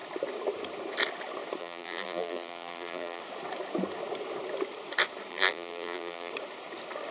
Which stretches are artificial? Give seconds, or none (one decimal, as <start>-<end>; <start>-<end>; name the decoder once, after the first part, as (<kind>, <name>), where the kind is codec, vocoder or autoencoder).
1.6-3.2 (vocoder, BigVGAN v2); 5.3-6.3